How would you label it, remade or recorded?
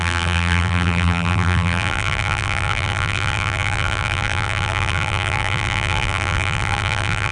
remade